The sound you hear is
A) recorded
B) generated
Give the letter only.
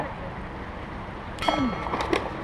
A